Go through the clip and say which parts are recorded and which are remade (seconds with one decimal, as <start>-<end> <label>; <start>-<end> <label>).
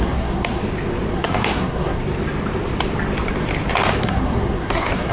0.0-0.6 remade; 0.6-1.1 recorded; 1.1-2.0 remade; 2.0-4.0 recorded; 4.0-5.1 remade